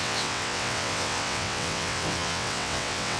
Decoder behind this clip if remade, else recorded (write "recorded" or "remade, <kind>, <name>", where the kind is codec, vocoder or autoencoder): remade, vocoder, WaveNeXt